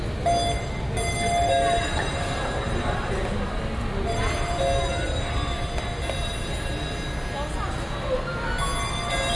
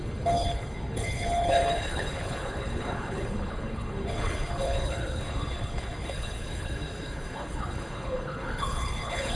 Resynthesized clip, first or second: second